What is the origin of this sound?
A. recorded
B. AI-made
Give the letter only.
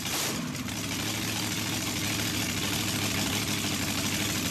A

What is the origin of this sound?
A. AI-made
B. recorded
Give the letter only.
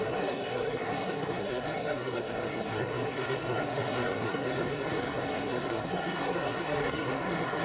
A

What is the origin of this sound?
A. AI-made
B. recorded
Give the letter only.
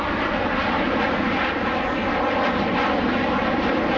B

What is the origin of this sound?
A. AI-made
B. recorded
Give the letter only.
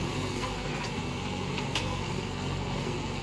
A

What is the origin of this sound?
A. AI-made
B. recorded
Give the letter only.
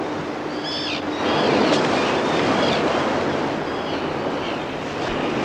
B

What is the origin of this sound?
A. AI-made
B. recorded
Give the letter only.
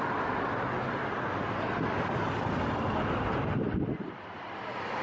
B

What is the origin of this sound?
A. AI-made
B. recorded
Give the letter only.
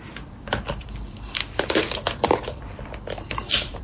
A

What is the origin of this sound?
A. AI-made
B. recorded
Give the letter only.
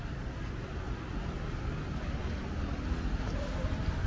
B